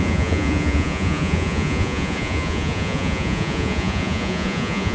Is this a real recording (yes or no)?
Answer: no